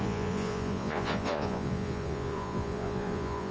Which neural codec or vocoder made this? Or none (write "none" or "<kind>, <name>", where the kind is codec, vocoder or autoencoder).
vocoder, Vocos